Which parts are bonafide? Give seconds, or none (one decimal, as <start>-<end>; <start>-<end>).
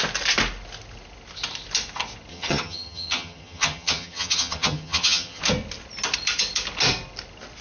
0.0-2.3; 5.4-7.6